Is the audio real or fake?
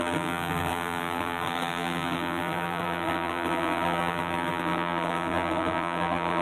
fake